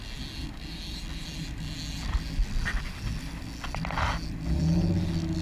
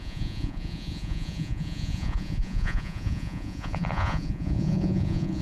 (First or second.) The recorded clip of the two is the first